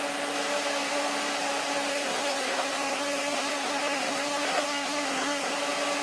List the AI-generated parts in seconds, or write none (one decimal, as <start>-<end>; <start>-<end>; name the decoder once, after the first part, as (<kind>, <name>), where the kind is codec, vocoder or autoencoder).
1.9-5.5 (codec, SNAC)